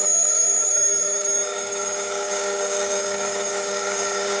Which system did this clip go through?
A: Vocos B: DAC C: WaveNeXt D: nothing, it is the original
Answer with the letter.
B